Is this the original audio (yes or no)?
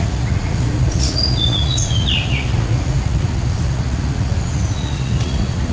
no